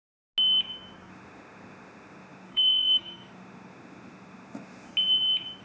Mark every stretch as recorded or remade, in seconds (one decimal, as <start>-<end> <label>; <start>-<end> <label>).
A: 0.0-1.1 recorded; 1.1-4.9 remade; 4.9-5.6 recorded